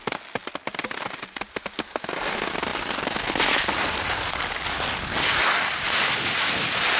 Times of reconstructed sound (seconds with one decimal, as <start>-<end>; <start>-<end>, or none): none